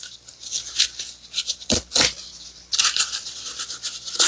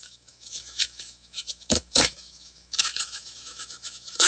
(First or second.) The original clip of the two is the first